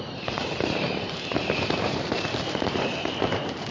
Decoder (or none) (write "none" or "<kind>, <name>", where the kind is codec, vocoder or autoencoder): vocoder, BigVGAN v2